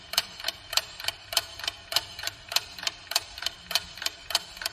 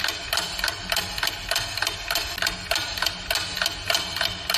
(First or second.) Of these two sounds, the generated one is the first